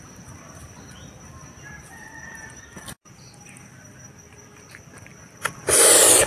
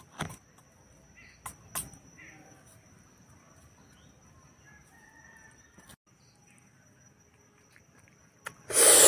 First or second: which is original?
second